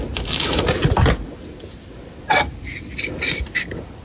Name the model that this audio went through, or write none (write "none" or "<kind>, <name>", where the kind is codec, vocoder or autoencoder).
none